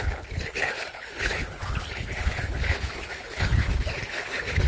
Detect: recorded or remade remade